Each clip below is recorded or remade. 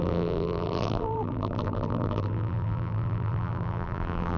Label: remade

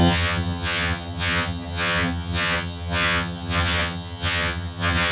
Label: remade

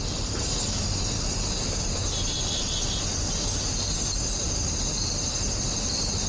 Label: recorded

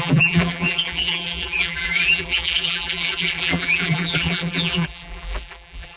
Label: remade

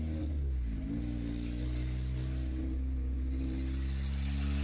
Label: recorded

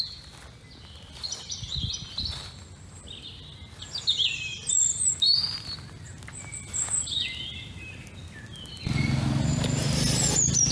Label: recorded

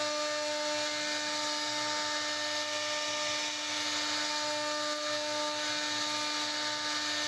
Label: recorded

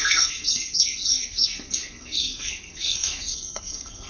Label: remade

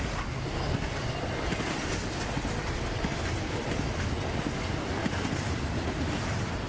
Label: recorded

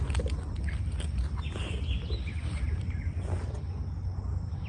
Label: recorded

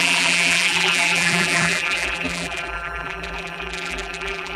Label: remade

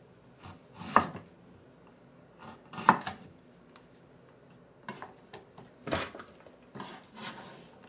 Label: recorded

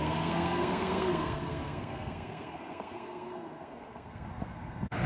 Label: remade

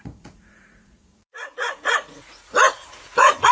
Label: remade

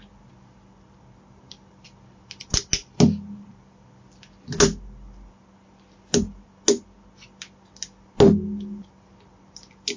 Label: recorded